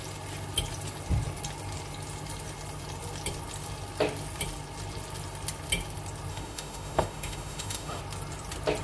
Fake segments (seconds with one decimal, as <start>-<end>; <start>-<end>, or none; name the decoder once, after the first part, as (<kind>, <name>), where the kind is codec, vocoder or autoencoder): 6.3-8.0 (autoencoder, DAC-VAE)